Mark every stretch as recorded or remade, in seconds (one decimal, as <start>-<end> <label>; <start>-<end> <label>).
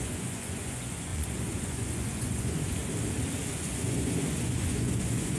0.0-2.8 remade; 2.8-3.5 recorded; 3.5-5.4 remade